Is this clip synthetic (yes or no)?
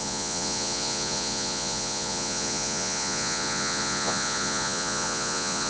yes